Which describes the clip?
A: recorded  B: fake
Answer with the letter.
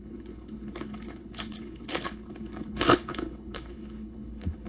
B